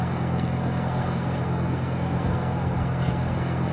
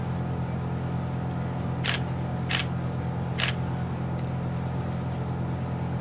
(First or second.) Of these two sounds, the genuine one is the second